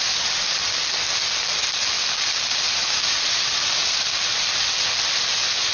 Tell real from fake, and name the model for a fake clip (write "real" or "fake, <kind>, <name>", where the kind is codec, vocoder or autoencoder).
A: real